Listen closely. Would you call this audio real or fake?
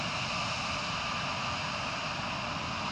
real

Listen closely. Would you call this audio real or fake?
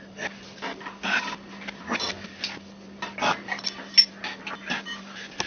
real